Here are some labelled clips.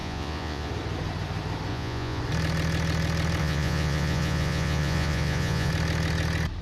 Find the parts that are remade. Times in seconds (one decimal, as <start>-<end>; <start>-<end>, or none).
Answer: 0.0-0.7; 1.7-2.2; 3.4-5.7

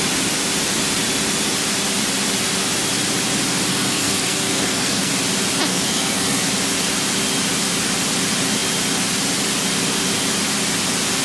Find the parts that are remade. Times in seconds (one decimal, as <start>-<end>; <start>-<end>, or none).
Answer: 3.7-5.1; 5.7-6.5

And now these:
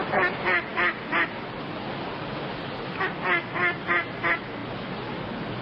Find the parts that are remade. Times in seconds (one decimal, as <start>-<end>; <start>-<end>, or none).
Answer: none

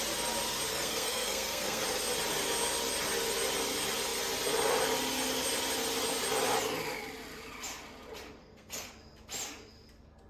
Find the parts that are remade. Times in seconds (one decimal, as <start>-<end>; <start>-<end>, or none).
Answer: 0.7-1.8; 8.4-8.9